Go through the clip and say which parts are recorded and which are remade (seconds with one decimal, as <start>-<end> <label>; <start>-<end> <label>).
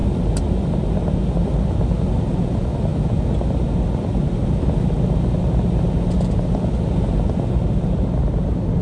0.0-8.8 recorded